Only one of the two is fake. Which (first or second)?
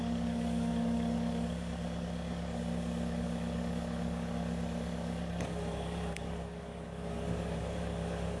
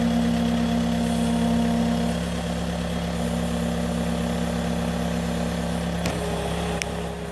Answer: first